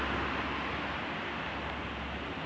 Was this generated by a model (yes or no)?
no